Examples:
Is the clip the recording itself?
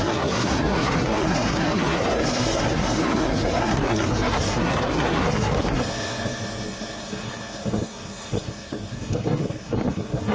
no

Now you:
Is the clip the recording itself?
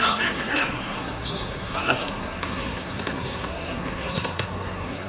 no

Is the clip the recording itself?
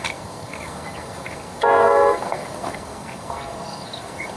no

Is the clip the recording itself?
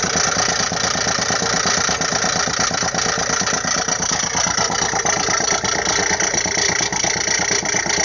yes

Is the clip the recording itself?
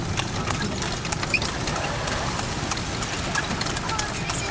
yes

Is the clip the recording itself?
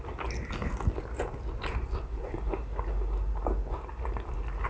yes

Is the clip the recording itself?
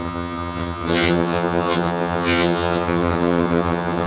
no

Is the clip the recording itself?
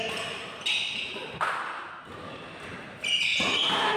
yes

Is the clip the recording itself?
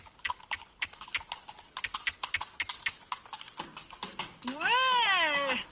yes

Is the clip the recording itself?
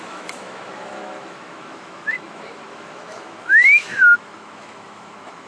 no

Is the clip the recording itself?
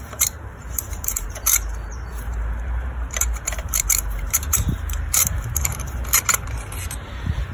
no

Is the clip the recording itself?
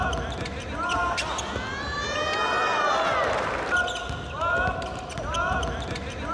yes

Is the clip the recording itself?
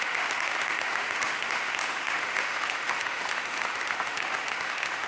no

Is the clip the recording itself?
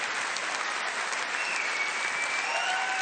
yes